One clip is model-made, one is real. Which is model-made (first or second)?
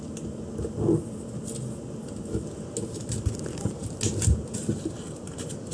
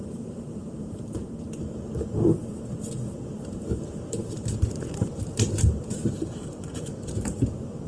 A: second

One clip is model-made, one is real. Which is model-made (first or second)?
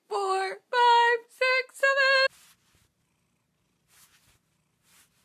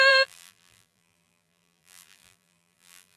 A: second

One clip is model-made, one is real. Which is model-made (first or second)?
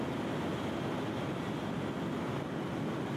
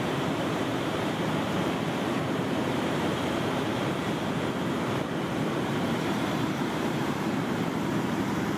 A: second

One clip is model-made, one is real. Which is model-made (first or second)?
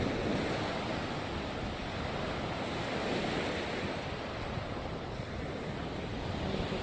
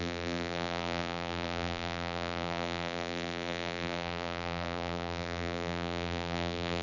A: second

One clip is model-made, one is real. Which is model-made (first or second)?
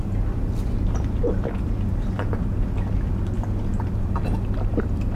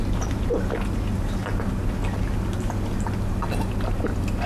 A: first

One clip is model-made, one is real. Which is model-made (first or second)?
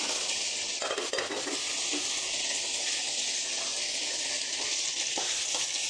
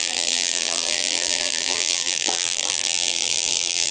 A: second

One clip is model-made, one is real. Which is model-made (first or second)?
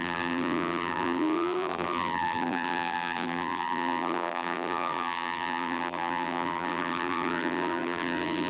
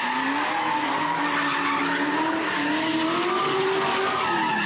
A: first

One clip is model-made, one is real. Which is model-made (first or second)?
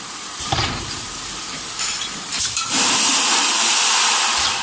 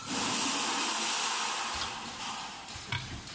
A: first